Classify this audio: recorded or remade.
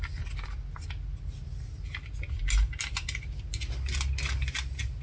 recorded